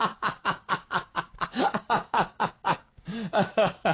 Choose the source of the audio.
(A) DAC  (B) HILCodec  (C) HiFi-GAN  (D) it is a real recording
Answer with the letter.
A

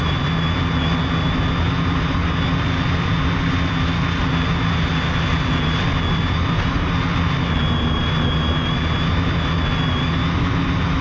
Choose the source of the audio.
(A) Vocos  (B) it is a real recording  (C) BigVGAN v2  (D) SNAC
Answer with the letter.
B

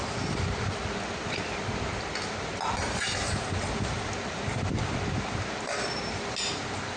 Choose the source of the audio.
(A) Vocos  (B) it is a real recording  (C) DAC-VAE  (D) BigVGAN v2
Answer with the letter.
B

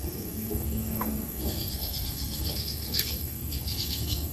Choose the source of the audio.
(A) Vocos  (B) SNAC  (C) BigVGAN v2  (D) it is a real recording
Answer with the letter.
B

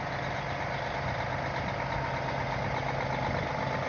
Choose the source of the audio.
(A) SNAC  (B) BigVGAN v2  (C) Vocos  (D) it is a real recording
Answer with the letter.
D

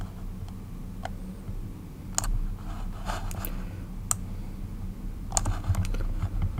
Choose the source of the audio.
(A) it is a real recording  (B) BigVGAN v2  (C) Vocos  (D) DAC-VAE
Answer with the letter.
A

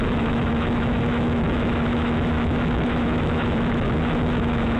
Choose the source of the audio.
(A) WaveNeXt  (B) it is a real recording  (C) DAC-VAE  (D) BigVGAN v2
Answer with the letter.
C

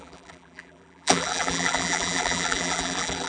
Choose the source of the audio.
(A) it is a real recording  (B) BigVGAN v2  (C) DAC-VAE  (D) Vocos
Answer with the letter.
B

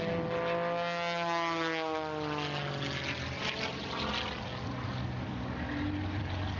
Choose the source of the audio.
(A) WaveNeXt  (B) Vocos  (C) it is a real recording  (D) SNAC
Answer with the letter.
C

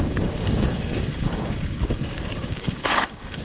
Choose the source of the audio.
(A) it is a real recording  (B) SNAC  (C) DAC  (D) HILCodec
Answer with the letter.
C